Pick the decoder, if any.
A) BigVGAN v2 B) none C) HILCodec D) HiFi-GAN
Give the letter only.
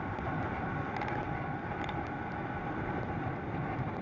A